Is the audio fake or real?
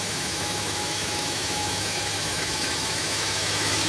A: fake